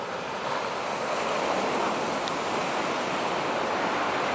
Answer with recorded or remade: recorded